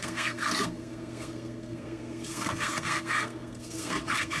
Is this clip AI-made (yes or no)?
yes